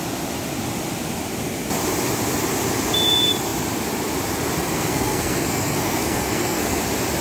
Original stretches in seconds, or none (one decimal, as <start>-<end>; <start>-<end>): 0.0-4.6; 6.8-7.2